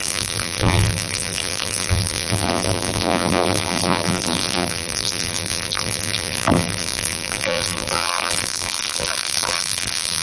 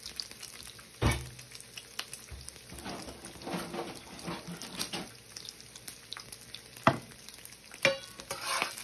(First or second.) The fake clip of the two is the first